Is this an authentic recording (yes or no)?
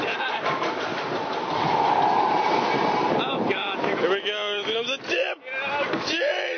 no